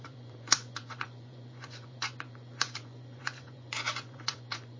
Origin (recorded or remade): remade